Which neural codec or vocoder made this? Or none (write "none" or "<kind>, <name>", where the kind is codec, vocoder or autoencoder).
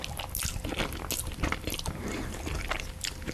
none